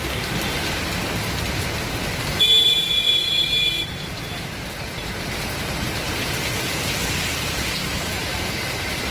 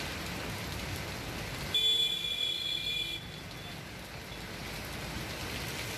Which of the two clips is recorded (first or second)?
second